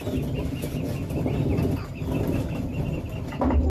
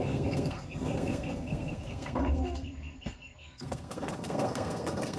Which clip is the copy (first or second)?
second